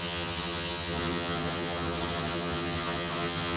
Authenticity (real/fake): fake